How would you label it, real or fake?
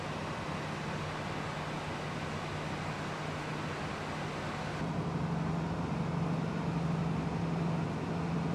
real